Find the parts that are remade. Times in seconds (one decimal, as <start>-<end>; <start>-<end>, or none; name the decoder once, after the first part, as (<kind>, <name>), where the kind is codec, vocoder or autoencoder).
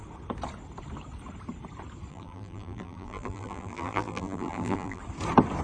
2.1-5.0 (vocoder, BigVGAN v2)